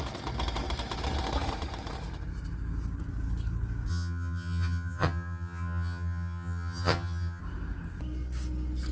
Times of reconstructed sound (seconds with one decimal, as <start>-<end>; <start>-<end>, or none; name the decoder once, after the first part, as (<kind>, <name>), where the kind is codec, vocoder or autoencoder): 3.9-7.4 (vocoder, HiFi-GAN)

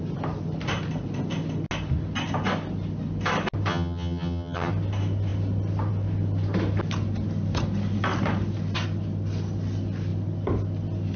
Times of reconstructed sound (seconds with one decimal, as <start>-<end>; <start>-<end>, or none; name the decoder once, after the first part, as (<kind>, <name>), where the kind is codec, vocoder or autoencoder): 3.7-4.7 (vocoder, HiFi-GAN)

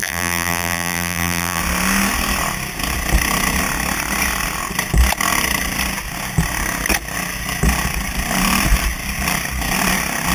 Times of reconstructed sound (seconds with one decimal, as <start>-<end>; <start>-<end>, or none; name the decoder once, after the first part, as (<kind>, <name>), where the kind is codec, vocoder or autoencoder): 0.0-1.6 (vocoder, BigVGAN v2)

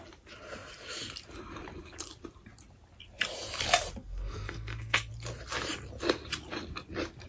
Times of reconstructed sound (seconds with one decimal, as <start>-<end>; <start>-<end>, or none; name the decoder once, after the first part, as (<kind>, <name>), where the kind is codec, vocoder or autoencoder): 4.0-5.1 (codec, SNAC)

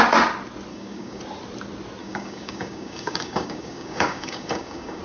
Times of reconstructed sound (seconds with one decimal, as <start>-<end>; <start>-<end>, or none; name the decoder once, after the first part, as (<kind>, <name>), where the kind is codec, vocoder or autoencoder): 0.7-1.2 (codec, DAC); 2.0-5.0

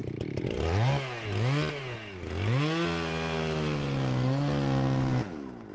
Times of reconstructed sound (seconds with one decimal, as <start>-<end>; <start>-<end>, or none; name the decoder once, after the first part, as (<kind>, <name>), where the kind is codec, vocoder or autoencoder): none

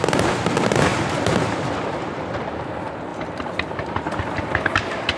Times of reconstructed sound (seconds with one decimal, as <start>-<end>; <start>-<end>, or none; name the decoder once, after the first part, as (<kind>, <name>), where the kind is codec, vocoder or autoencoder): none

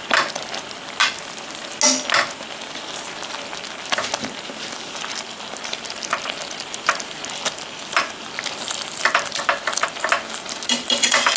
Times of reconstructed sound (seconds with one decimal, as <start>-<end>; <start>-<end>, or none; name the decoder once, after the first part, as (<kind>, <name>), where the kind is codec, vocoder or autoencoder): none